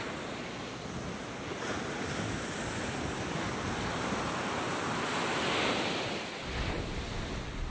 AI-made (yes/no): no